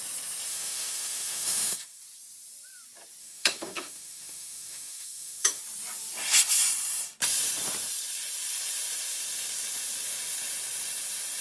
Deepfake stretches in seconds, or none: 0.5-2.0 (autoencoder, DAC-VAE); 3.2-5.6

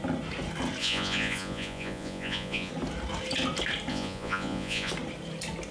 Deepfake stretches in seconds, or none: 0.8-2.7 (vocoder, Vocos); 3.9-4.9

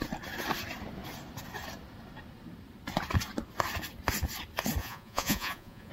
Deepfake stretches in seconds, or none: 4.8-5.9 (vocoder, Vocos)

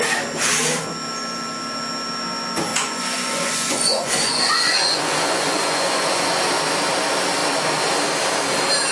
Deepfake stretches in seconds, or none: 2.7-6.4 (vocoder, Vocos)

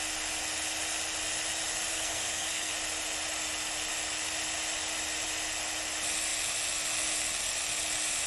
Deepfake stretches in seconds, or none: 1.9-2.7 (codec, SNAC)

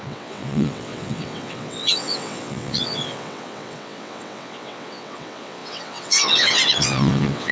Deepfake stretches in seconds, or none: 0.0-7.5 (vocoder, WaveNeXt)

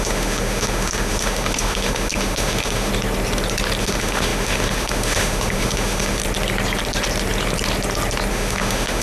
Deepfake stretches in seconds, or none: 0.0-2.9 (autoencoder, DAC-VAE); 3.8-6.2; 8.3-9.0